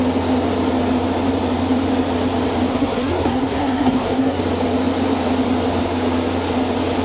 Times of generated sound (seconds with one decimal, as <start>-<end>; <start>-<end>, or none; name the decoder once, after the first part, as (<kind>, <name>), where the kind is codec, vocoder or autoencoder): 2.7-4.4 (codec, SNAC)